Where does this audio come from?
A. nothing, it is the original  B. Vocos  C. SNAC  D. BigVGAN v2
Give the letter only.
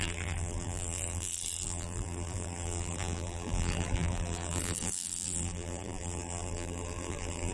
D